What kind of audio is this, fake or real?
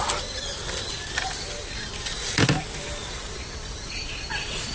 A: real